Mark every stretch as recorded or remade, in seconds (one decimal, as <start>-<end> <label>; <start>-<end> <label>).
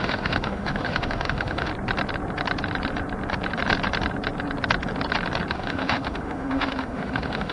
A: 0.0-1.7 remade; 1.7-5.5 recorded; 5.5-7.5 remade